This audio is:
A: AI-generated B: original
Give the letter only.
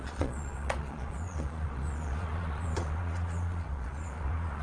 A